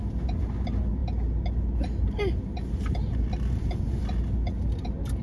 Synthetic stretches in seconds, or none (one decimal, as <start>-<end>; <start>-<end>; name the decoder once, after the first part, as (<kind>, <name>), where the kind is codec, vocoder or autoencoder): none